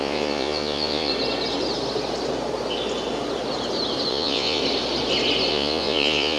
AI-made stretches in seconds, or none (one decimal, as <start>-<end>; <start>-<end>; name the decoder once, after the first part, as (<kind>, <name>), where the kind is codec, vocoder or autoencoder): 0.0-1.1 (vocoder, Vocos); 4.1-4.6; 5.5-6.4